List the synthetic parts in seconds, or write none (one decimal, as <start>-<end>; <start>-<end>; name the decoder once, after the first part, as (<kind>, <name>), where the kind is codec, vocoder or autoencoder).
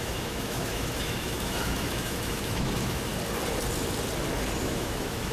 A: 0.0-3.1 (autoencoder, DAC-VAE); 4.6-5.3